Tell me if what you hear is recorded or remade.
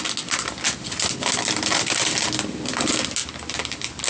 recorded